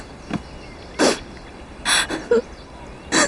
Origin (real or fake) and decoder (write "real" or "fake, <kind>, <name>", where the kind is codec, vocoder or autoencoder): real